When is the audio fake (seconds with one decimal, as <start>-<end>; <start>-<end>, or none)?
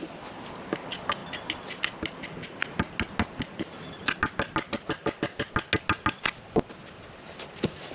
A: none